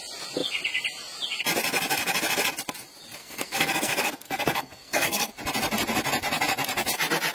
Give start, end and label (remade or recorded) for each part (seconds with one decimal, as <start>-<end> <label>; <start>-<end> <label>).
0.0-3.2 recorded; 3.2-5.3 remade; 5.3-7.3 recorded